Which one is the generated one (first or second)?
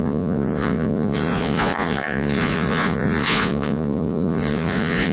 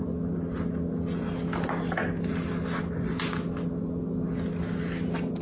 first